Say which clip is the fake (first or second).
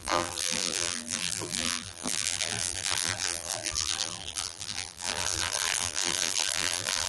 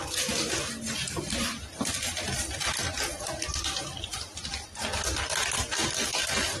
first